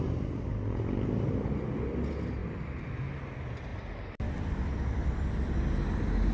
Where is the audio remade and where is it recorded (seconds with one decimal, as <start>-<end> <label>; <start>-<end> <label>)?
0.0-6.3 recorded